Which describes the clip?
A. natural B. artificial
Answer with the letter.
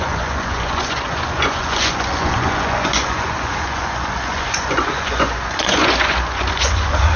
B